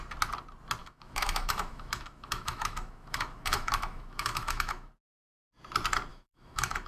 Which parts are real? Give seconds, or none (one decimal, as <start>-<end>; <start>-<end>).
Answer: 0.0-0.8; 4.9-6.1